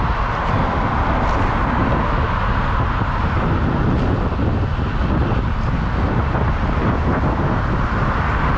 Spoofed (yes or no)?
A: no